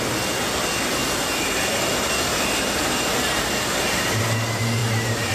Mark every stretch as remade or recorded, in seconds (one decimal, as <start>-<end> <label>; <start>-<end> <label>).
0.0-5.3 recorded